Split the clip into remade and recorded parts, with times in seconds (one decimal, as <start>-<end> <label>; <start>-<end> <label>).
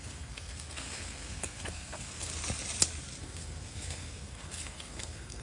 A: 0.0-2.3 remade; 2.3-3.2 recorded; 3.2-5.4 remade